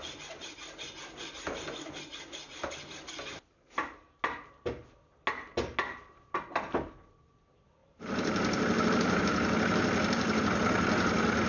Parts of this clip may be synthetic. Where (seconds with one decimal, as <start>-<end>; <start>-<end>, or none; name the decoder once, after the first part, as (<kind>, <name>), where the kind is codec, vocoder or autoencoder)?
7.8-9.2 (vocoder, BigVGAN v2)